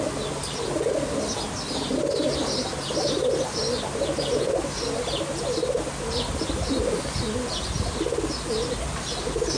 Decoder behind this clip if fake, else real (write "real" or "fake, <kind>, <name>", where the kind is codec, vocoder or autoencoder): real